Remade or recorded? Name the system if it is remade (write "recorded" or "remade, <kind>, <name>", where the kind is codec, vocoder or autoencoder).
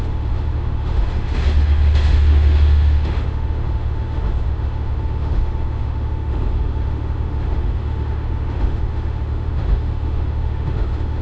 remade, autoencoder, DAC-VAE